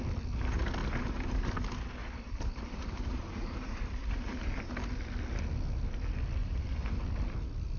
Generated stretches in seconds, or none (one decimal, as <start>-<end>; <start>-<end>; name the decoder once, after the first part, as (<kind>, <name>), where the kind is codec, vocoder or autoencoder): 0.8-1.5 (vocoder, BigVGAN v2); 2.0-4.7; 6.4-7.0